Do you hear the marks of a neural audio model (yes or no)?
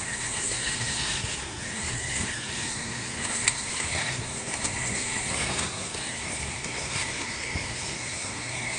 yes